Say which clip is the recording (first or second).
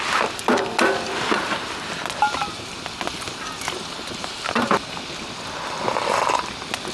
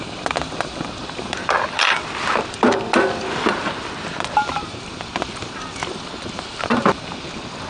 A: first